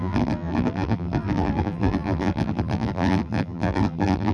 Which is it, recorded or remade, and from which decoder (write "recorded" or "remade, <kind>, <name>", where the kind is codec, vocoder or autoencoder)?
remade, vocoder, BigVGAN v2